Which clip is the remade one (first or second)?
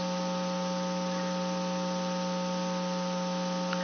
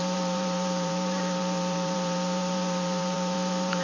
second